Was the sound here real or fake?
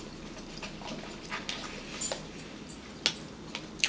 real